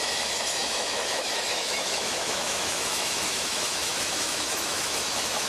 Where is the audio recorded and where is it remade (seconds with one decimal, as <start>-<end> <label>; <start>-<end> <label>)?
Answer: 0.0-5.5 remade